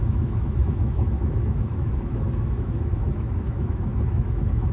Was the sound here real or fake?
fake